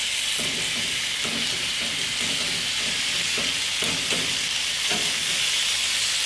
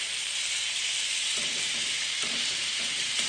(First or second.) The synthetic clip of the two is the second